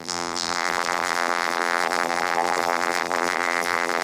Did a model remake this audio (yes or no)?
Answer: yes